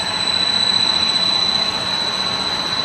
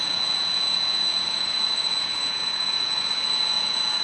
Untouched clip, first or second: first